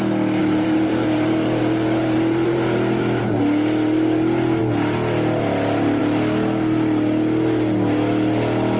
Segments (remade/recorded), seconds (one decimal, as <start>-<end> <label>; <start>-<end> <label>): 0.0-0.4 recorded; 0.4-3.3 remade; 3.3-8.8 recorded